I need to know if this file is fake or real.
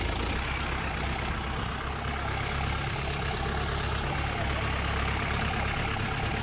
real